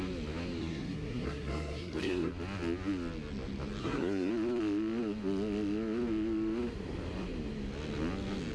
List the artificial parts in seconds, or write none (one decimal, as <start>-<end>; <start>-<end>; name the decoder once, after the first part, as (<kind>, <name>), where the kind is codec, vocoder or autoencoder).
0.6-2.3 (codec, SNAC); 3.8-4.3